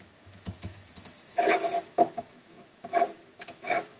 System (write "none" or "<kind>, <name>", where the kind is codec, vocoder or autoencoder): autoencoder, DAC-VAE